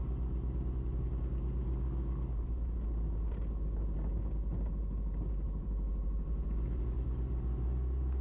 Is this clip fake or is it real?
real